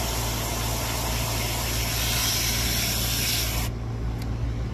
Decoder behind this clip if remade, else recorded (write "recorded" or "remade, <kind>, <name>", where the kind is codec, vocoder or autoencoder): recorded